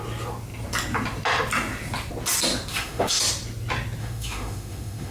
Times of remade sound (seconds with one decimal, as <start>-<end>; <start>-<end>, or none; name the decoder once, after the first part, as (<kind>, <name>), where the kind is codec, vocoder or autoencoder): 2.7-3.2 (autoencoder, DAC-VAE); 4.0-5.1